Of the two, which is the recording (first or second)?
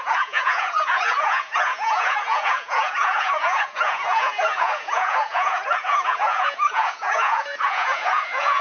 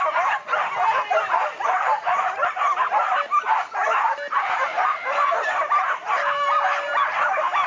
second